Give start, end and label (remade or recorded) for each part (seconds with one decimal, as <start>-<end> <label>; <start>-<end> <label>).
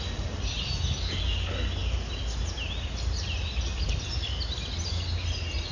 0.0-5.7 recorded